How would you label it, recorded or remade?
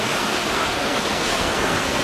remade